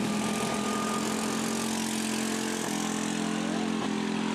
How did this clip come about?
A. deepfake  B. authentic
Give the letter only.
B